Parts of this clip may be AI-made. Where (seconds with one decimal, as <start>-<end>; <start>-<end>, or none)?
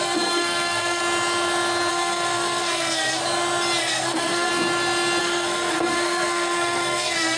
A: 0.0-1.0; 1.9-3.2; 3.8-4.5; 5.2-7.4